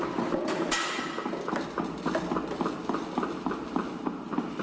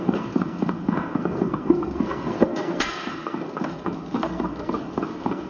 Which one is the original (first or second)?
first